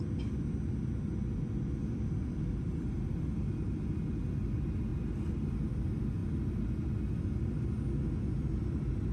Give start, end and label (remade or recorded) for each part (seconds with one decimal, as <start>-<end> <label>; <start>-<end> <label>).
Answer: 0.0-1.8 recorded; 1.8-3.4 remade; 3.4-9.1 recorded